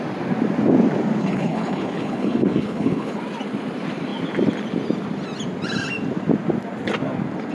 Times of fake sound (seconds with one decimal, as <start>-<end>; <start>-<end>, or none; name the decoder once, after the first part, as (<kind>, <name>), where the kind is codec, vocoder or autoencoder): 1.2-3.2 (codec, HILCodec)